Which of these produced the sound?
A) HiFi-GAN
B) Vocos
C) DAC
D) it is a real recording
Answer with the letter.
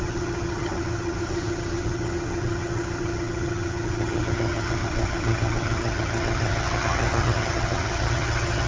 A